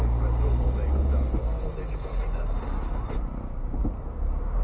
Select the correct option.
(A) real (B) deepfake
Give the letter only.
A